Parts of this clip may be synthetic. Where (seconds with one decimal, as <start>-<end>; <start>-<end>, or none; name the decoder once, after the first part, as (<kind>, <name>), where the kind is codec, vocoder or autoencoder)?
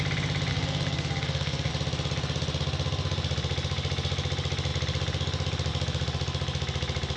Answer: 0.5-1.7 (codec, SNAC)